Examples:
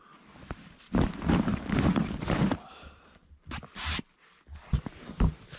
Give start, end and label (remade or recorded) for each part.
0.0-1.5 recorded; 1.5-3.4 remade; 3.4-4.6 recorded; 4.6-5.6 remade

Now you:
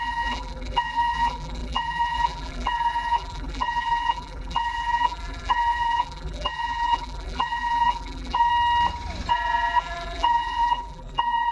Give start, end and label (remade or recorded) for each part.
0.0-8.5 remade; 8.5-9.3 recorded; 9.3-11.5 remade

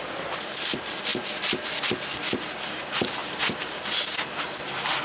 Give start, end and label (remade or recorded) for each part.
0.0-5.0 remade